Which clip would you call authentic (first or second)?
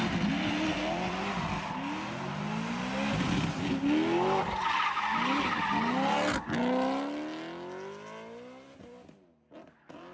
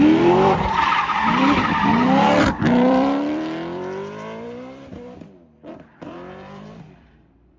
first